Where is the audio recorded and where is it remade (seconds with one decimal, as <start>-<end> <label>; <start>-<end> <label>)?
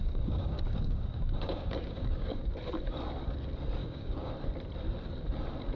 0.0-2.4 remade; 2.4-3.8 recorded; 3.8-4.3 remade; 4.3-5.8 recorded